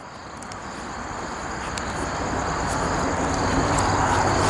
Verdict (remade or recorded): recorded